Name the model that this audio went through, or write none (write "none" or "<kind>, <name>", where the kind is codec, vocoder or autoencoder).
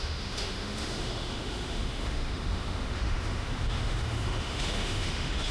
autoencoder, DAC-VAE